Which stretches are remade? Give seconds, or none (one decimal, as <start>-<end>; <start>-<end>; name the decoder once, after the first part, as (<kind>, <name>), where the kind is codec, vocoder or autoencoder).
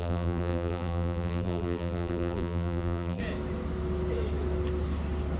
0.0-3.2 (vocoder, BigVGAN v2)